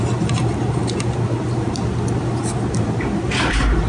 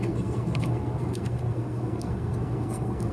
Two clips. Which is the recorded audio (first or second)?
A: first